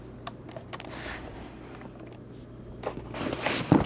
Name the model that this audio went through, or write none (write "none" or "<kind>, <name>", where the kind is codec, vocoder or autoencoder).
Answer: none